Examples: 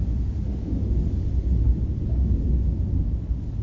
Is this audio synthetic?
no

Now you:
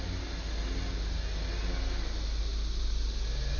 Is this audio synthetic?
no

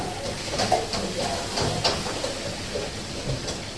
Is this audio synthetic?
no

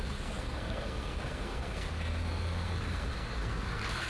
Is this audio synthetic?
yes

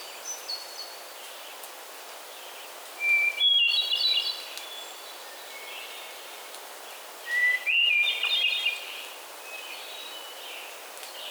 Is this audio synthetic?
yes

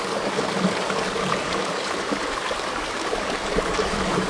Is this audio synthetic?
yes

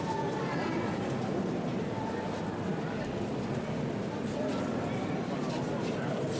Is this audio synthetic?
no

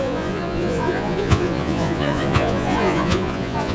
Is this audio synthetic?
yes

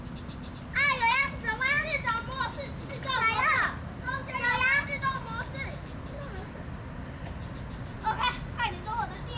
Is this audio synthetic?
no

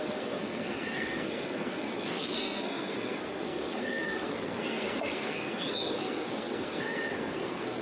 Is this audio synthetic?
yes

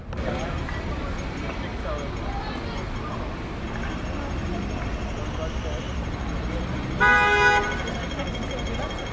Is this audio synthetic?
no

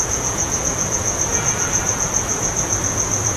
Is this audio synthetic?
yes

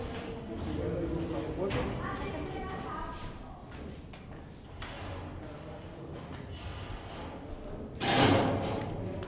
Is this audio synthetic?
no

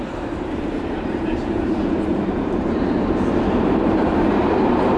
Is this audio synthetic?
yes